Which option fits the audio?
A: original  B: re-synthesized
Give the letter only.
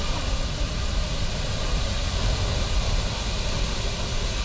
A